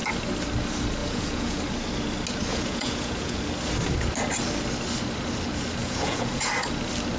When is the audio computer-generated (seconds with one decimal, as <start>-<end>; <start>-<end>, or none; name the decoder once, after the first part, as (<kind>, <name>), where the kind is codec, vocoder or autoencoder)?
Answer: 1.0-1.6 (vocoder, Vocos); 2.5-3.4; 5.8-6.5

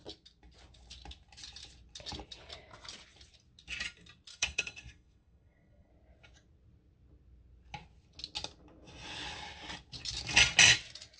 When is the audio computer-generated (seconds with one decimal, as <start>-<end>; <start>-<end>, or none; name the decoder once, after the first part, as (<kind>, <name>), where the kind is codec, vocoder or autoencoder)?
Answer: 4.3-5.9 (codec, SNAC)